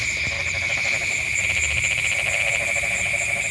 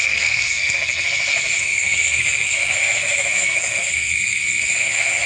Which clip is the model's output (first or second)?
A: second